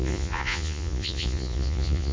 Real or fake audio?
fake